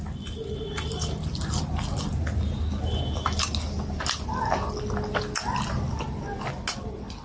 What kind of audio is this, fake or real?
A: real